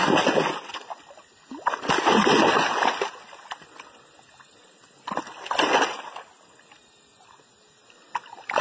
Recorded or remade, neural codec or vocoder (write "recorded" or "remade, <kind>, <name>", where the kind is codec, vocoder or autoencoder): recorded